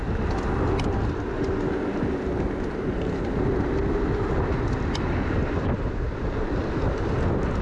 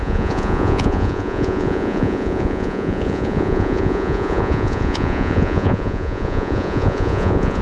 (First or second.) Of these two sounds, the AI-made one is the second